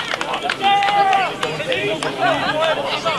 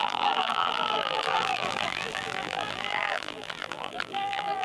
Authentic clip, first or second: first